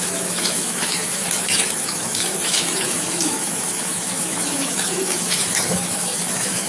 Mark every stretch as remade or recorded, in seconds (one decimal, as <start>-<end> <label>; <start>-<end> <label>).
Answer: 0.0-6.7 remade